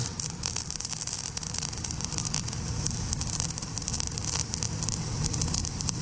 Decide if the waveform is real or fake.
fake